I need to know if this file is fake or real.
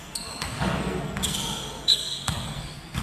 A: fake